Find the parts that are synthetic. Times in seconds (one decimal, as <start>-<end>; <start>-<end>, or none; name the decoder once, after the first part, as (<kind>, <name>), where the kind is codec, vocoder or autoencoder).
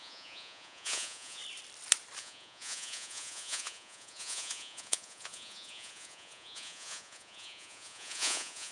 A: 0.0-1.4 (vocoder, Vocos); 2.2-8.7